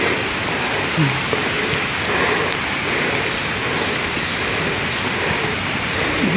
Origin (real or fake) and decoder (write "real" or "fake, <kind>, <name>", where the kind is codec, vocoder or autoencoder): real